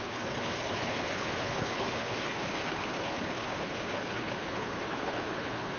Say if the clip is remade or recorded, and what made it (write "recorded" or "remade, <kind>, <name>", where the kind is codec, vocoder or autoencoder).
remade, codec, HILCodec